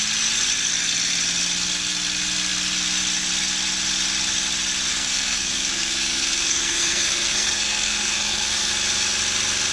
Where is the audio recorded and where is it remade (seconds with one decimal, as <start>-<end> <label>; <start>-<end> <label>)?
0.0-4.9 recorded; 4.9-8.7 remade; 8.7-9.7 recorded